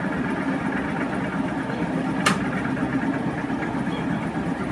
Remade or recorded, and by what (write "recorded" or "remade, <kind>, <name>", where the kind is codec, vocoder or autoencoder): recorded